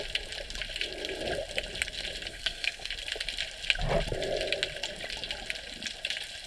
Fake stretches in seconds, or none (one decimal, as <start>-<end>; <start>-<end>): 2.3-2.9

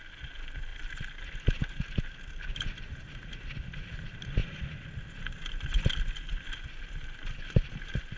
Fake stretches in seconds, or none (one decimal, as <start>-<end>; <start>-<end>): none

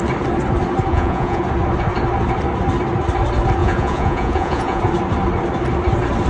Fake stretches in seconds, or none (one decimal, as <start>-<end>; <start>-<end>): 0.9-1.4; 3.6-4.8

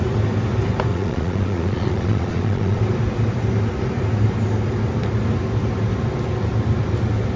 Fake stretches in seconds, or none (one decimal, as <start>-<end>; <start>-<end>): 0.9-2.8

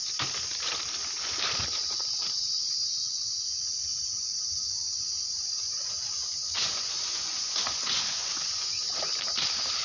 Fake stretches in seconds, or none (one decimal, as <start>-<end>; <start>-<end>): 3.9-8.8